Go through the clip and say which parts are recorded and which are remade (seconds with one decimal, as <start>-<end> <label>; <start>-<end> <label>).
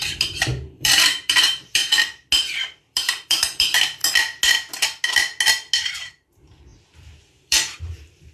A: 0.0-1.8 remade; 1.8-2.8 recorded; 2.8-4.0 remade; 4.0-5.9 recorded; 5.9-8.3 remade